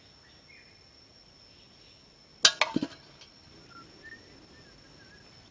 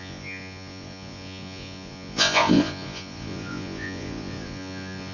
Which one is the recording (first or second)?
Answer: first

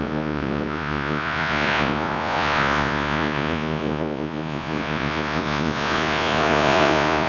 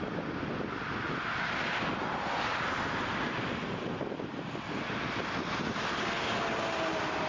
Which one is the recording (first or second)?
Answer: second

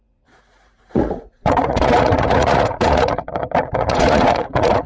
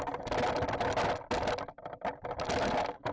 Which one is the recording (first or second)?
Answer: second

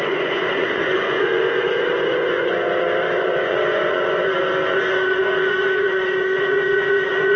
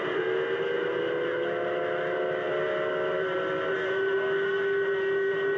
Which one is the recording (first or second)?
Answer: second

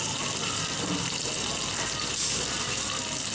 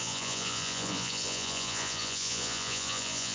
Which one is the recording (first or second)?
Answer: first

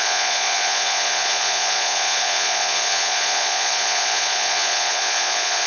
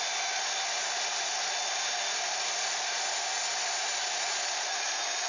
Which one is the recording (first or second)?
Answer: second